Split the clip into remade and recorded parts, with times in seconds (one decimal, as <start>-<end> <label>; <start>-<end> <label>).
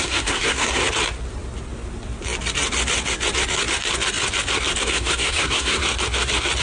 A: 0.0-0.8 remade; 0.8-4.8 recorded; 4.8-5.8 remade; 5.8-6.6 recorded